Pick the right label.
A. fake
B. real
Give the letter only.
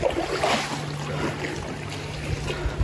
B